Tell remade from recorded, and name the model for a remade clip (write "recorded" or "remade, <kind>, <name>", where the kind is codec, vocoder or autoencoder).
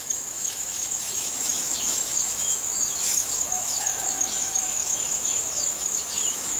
remade, autoencoder, DAC-VAE